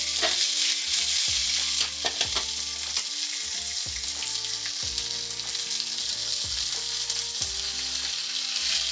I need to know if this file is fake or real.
real